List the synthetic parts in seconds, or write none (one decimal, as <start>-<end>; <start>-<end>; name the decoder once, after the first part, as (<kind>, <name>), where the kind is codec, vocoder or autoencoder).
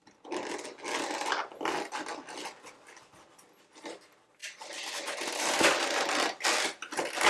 none